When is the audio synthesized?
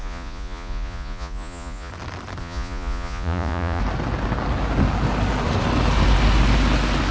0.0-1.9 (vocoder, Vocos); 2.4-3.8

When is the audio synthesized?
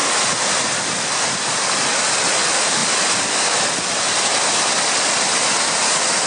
none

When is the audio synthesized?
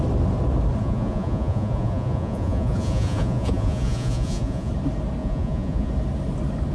0.8-4.7 (vocoder, Vocos); 5.2-5.9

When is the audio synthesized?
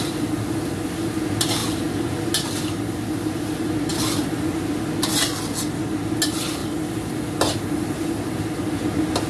none